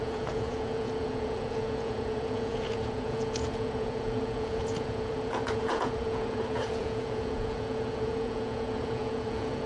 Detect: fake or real fake